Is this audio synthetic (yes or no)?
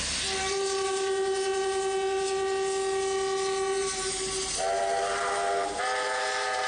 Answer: no